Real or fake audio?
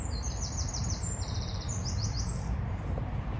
fake